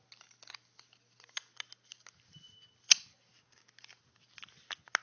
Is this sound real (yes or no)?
yes